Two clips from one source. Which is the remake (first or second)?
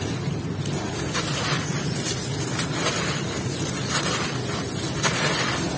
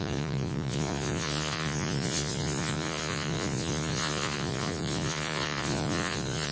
second